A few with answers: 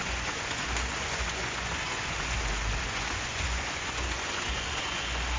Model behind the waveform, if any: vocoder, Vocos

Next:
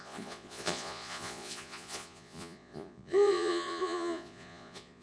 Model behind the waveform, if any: vocoder, Vocos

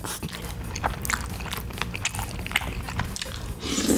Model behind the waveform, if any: none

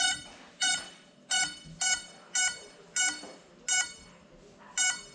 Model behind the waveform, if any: none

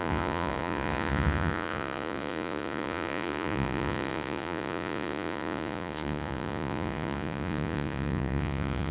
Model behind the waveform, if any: vocoder, Vocos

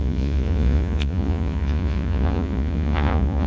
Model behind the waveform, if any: vocoder, Vocos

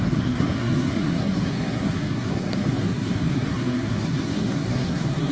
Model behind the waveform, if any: codec, SNAC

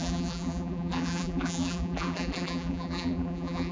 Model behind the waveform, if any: vocoder, BigVGAN v2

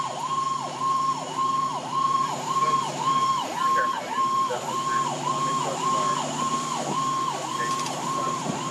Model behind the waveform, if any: vocoder, BigVGAN v2